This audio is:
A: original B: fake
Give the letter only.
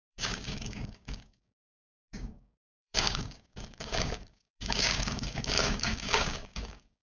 B